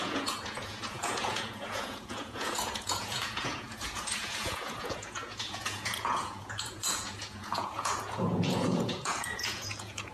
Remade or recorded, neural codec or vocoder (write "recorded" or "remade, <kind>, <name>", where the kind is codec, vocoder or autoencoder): remade, vocoder, Vocos